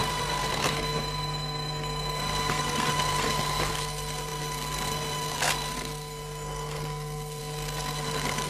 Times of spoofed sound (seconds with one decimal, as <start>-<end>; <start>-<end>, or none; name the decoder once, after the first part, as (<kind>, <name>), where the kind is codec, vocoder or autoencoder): 0.0-8.5 (codec, SNAC)